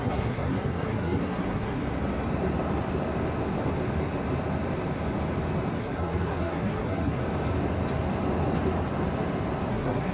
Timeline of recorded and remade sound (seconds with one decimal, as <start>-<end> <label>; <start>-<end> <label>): 0.0-1.8 remade; 1.8-5.8 recorded; 5.8-7.2 remade; 7.2-9.7 recorded; 9.7-10.1 remade